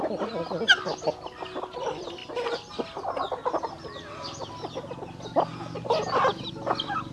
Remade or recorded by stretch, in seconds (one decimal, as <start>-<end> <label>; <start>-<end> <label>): 0.0-7.1 recorded